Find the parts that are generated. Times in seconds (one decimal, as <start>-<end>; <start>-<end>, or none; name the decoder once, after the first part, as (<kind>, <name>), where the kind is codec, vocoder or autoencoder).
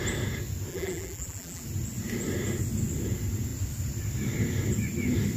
0.7-1.6 (vocoder, BigVGAN v2)